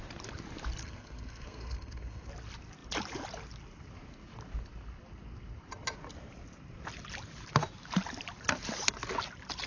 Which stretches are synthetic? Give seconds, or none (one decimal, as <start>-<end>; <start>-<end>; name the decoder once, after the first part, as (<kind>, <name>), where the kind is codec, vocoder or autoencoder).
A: 0.8-2.3 (codec, SNAC)